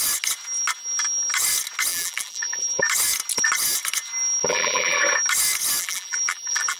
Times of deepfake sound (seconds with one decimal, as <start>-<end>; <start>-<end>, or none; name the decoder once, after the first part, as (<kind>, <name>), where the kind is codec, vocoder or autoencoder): 1.9-2.8 (vocoder, BigVGAN v2); 4.4-5.0; 5.8-6.8